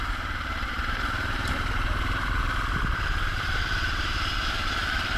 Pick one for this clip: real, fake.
fake